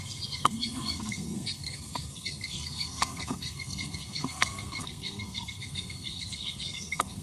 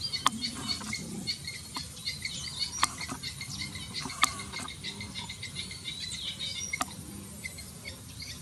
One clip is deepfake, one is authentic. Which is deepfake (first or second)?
first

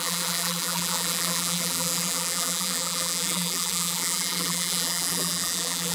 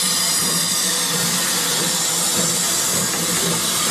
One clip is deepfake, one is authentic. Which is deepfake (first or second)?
first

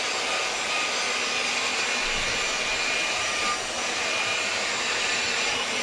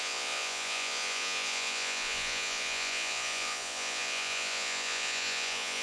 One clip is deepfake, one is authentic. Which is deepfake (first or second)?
second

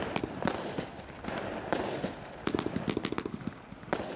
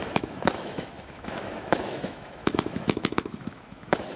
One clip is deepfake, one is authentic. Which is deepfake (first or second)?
second